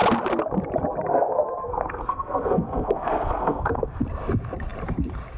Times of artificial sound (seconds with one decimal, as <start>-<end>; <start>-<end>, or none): 1.1-4.0